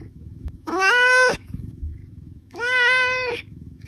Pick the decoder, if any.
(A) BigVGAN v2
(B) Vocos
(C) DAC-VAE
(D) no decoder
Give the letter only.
C